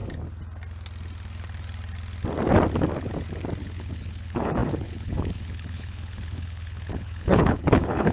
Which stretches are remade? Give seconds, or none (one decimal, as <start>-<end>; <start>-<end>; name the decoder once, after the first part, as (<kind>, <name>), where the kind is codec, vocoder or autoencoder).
3.6-8.1 (codec, HILCodec)